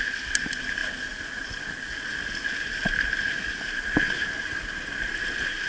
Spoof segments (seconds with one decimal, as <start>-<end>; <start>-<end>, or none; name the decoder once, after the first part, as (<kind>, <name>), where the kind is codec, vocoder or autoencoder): none